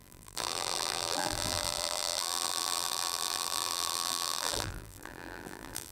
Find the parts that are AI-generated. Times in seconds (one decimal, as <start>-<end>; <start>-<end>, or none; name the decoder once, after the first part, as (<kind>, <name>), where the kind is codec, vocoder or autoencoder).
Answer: 0.0-5.9 (vocoder, BigVGAN v2)